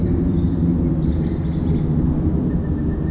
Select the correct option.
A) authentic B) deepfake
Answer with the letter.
A